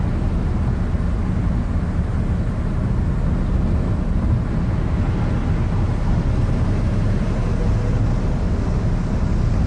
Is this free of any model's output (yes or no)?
yes